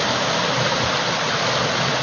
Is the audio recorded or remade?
recorded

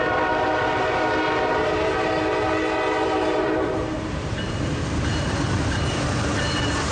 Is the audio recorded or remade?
remade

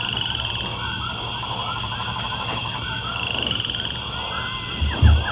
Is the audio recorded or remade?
recorded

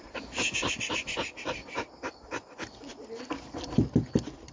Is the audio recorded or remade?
recorded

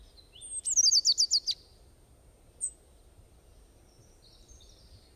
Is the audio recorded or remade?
recorded